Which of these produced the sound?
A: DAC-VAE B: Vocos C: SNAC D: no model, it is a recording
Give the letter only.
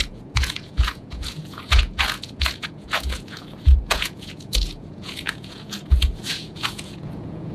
B